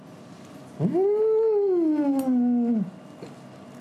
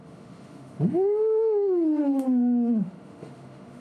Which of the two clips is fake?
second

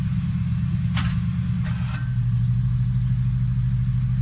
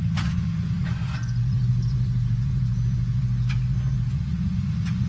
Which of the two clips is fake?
second